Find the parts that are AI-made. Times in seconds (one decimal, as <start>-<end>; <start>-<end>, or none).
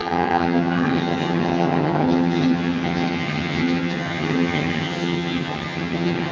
0.0-6.3